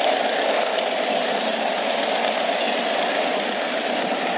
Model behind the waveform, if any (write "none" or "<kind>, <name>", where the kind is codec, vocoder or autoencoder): none